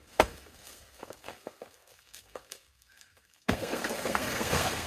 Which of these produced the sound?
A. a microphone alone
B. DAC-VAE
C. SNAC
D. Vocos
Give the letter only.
C